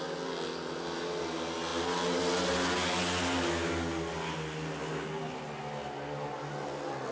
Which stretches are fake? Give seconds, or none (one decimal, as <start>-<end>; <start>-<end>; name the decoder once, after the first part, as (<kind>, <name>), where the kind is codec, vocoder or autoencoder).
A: none